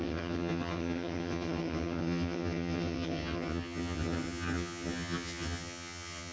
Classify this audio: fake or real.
fake